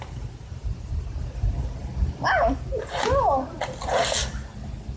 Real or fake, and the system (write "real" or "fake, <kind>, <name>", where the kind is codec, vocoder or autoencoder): real